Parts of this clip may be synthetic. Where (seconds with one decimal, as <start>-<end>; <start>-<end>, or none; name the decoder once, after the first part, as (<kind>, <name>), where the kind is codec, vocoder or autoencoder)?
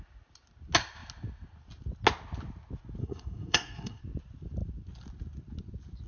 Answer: 3.0-4.0 (codec, SNAC)